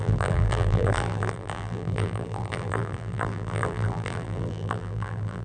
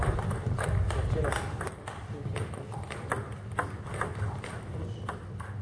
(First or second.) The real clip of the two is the second